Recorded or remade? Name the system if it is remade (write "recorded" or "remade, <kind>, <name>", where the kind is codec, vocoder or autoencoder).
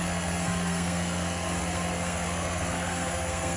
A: remade, codec, SNAC